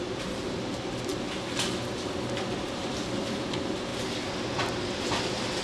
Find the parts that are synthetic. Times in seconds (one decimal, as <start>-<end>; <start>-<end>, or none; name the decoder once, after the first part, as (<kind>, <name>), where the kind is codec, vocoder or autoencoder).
0.0-3.9 (vocoder, BigVGAN v2)